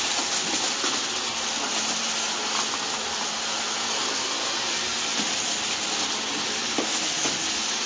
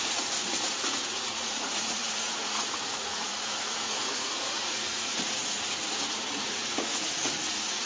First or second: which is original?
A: first